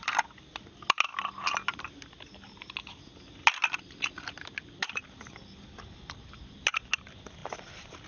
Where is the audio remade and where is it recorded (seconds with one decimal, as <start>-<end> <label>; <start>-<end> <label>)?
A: 0.0-8.1 recorded